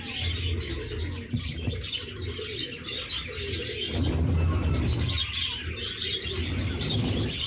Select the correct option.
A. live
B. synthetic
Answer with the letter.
A